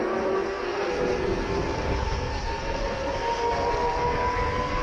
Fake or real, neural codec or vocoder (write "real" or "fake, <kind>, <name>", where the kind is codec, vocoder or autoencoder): fake, codec, SNAC